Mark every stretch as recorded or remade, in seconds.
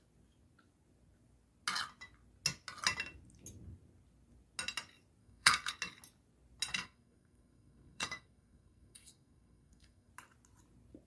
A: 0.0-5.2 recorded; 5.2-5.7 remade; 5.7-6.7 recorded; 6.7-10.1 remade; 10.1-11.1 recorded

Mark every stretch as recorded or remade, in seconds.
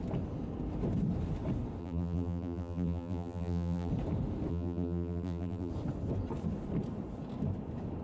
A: 0.0-1.8 recorded; 1.8-3.9 remade; 3.9-4.5 recorded; 4.5-5.7 remade; 5.7-8.0 recorded